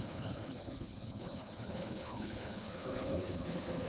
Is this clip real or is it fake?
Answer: fake